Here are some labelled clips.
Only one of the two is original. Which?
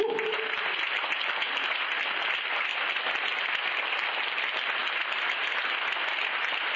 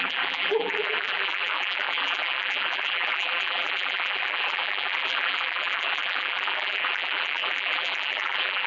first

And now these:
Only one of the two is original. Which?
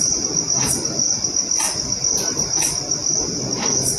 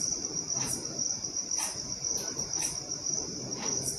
first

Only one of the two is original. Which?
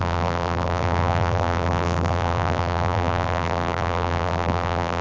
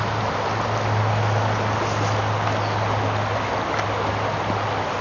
second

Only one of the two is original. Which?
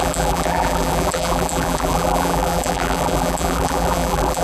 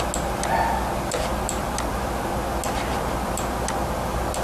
second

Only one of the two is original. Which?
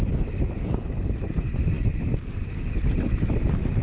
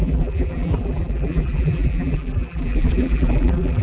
first